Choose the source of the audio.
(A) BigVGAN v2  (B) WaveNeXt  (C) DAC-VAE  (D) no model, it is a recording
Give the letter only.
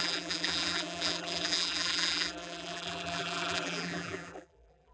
A